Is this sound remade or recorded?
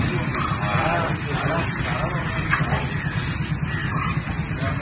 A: recorded